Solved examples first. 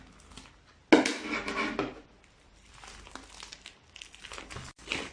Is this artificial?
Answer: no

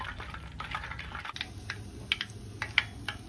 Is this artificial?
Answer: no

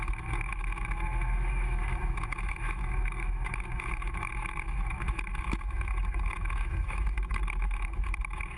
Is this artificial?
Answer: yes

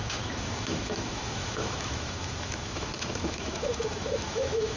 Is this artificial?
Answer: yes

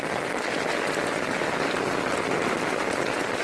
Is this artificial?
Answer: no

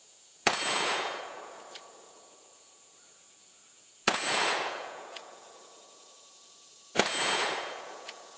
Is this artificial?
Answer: yes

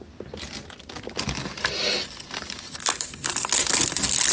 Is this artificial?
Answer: no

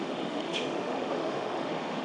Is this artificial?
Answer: yes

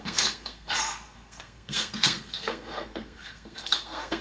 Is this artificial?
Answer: yes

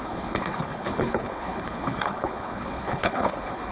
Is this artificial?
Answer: yes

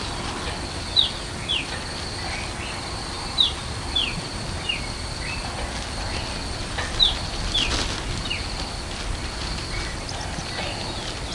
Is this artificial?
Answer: no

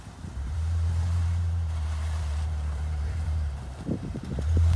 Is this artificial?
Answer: yes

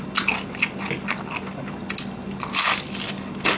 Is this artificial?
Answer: no